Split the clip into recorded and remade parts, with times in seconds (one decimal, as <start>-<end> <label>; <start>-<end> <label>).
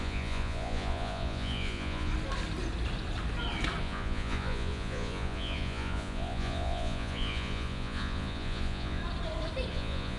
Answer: 0.0-2.1 remade; 2.1-3.8 recorded; 3.8-9.0 remade; 9.0-9.7 recorded; 9.7-10.2 remade